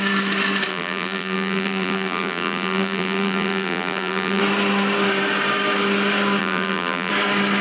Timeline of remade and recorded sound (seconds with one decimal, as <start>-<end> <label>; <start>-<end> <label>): 0.0-0.7 recorded; 0.7-4.4 remade; 4.4-6.4 recorded; 6.4-7.1 remade; 7.1-7.6 recorded